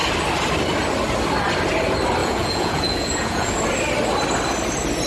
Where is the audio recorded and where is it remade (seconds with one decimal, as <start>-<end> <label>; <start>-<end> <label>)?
0.0-2.2 recorded; 2.2-3.5 remade; 3.5-5.1 recorded